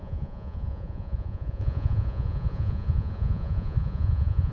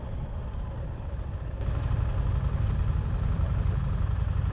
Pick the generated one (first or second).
first